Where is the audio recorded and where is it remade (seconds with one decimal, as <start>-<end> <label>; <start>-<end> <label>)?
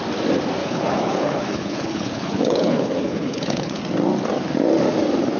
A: 0.0-0.6 recorded; 0.6-3.8 remade; 3.8-5.4 recorded